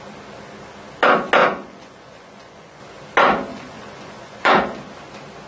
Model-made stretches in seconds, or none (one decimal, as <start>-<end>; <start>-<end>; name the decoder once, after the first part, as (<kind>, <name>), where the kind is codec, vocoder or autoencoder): 1.4-2.8 (vocoder, Vocos); 3.5-4.5